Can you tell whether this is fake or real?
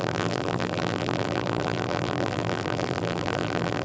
fake